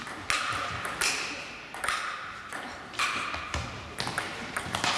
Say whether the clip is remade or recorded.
recorded